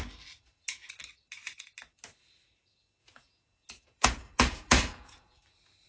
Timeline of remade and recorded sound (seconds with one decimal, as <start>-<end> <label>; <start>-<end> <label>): 0.0-3.0 recorded; 3.0-5.4 remade; 5.4-5.9 recorded